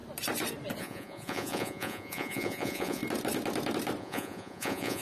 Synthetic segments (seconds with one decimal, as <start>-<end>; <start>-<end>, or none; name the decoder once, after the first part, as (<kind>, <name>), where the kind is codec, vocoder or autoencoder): 0.8-3.0 (vocoder, Vocos); 4.0-5.0